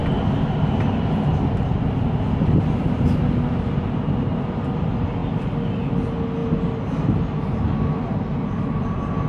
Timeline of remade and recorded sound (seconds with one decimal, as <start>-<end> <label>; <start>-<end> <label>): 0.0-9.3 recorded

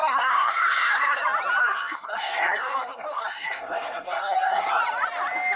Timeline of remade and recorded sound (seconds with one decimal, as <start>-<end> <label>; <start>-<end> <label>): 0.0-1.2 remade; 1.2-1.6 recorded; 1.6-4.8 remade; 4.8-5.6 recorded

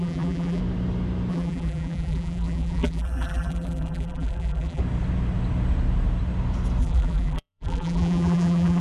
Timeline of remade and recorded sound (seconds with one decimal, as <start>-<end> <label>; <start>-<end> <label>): 0.0-0.6 remade; 0.6-1.3 recorded; 1.3-4.8 remade; 4.8-6.8 recorded; 6.8-8.8 remade

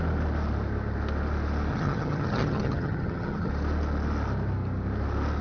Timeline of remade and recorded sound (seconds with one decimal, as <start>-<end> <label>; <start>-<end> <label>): 0.0-1.7 recorded; 1.7-3.5 remade; 3.5-5.4 recorded

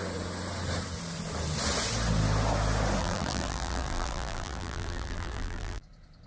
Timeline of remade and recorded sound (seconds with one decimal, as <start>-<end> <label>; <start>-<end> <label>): 0.0-3.0 recorded; 3.0-5.8 remade; 5.8-6.3 recorded

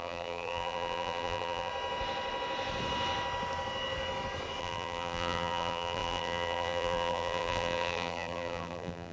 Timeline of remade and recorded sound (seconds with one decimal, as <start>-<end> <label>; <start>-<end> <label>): 0.0-1.7 remade; 1.7-4.6 recorded; 4.6-9.1 remade

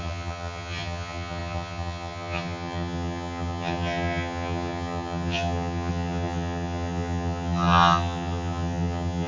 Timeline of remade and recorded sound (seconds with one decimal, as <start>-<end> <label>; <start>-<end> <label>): 0.0-9.3 remade

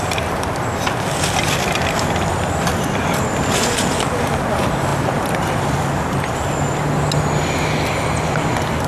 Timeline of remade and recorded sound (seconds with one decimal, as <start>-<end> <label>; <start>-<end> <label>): 0.0-8.9 recorded